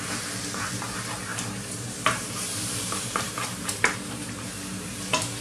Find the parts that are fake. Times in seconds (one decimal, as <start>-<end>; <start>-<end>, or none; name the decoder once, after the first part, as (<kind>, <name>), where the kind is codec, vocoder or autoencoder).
1.3-4.5 (vocoder, BigVGAN v2)